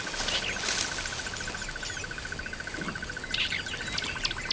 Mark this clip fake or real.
real